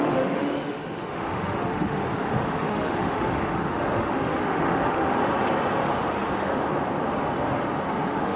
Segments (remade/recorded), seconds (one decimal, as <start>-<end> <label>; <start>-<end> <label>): 0.0-5.2 remade; 5.2-5.8 recorded; 5.8-6.6 remade; 6.6-7.9 recorded; 7.9-8.4 remade